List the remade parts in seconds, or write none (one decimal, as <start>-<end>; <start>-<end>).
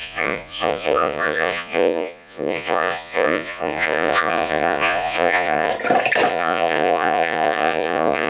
0.0-5.7; 6.3-8.3